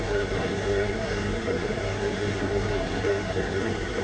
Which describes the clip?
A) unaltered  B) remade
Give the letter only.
B